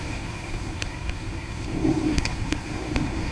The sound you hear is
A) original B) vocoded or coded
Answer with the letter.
B